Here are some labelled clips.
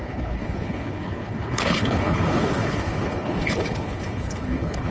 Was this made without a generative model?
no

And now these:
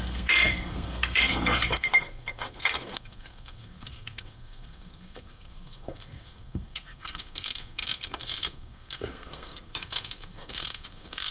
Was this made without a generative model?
no